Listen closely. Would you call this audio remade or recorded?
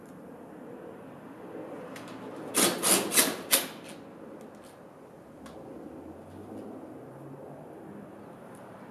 recorded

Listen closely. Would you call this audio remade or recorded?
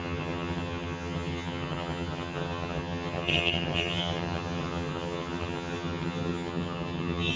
remade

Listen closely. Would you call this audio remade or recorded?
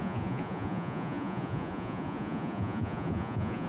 remade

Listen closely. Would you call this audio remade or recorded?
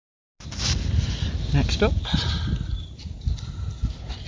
recorded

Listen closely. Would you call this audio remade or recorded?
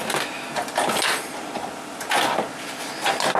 recorded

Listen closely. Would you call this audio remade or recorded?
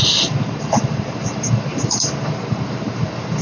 remade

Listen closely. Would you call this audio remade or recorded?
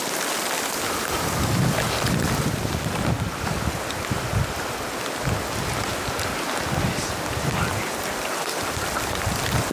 recorded